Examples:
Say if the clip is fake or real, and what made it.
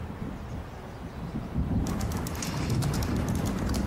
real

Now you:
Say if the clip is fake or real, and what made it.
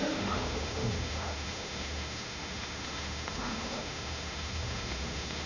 fake, autoencoder, DAC-VAE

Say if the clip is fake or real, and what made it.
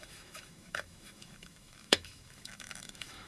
fake, autoencoder, DAC-VAE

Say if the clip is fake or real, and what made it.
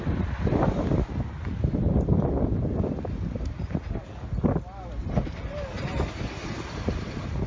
real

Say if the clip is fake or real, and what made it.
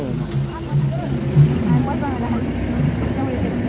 real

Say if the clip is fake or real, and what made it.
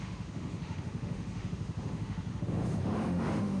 fake, autoencoder, DAC-VAE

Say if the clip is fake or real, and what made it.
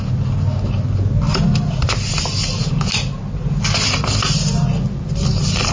real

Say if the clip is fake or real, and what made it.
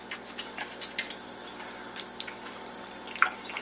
real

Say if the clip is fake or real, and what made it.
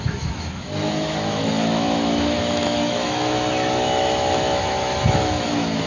fake, autoencoder, DAC-VAE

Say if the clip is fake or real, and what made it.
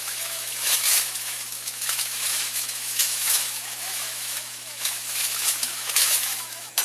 fake, autoencoder, DAC-VAE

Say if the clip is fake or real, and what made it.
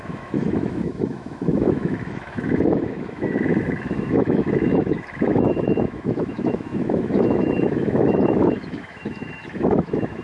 fake, autoencoder, DAC-VAE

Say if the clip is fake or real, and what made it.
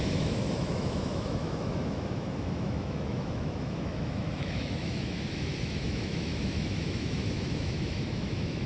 fake, autoencoder, DAC-VAE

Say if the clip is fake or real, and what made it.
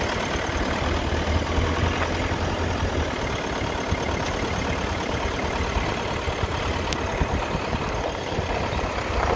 real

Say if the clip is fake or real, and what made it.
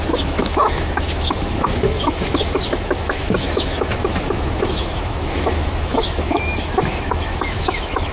fake, autoencoder, DAC-VAE